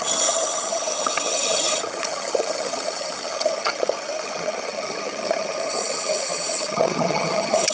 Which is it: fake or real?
fake